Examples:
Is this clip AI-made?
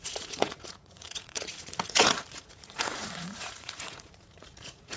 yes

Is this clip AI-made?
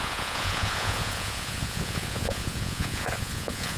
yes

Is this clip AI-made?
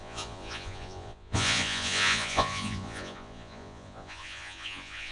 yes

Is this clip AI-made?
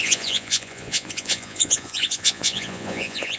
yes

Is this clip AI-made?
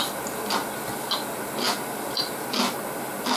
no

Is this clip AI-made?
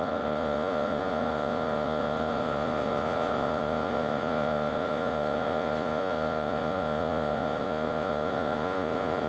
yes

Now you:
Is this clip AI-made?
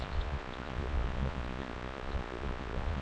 yes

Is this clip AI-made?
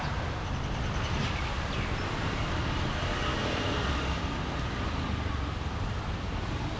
no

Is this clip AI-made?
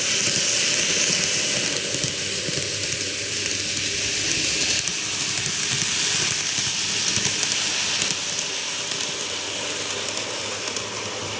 no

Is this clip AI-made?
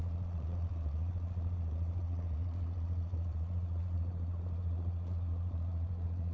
yes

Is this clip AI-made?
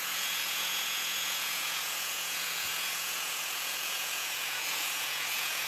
yes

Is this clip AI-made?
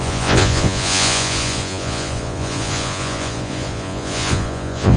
yes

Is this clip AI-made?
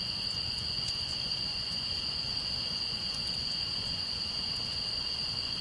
yes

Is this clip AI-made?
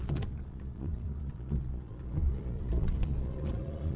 yes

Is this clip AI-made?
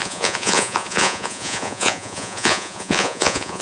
yes